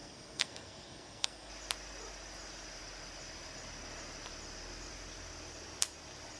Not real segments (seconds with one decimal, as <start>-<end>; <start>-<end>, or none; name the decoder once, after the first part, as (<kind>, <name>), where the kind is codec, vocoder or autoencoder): 0.0-1.5 (codec, SNAC)